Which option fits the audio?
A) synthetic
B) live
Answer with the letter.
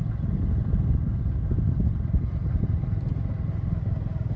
B